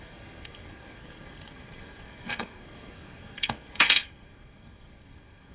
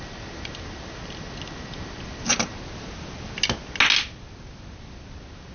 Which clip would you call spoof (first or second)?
first